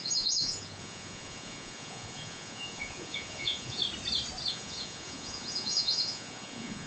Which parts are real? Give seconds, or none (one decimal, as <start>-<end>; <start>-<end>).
3.8-4.5